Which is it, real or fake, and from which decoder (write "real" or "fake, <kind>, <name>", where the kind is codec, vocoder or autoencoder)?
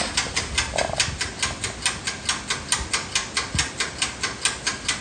real